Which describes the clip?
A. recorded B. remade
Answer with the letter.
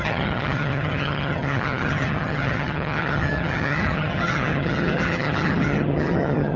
B